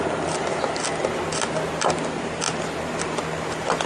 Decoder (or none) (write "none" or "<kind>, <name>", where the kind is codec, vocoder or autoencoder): none